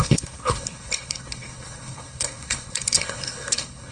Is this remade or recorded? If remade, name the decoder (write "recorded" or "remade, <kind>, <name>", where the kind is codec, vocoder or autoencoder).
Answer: remade, codec, HILCodec